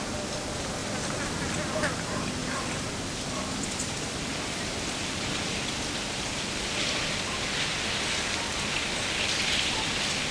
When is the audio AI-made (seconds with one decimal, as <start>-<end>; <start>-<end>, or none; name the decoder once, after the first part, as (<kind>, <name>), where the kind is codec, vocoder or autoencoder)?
2.4-7.0 (vocoder, BigVGAN v2); 8.5-10.3